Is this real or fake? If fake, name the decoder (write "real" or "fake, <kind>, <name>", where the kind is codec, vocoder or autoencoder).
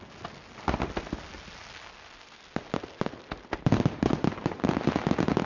real